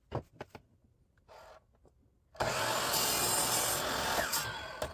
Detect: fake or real real